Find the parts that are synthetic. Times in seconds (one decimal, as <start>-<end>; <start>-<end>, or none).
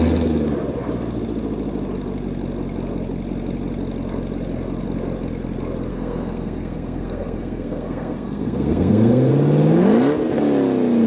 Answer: 5.9-9.3